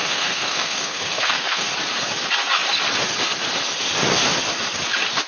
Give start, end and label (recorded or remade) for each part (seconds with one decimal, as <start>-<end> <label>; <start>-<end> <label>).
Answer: 0.0-1.7 remade; 1.7-5.3 recorded